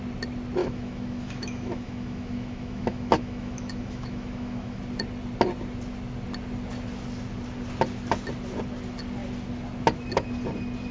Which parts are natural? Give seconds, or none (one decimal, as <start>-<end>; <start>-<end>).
0.0-0.6; 4.8-10.9